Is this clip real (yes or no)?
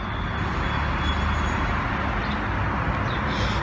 yes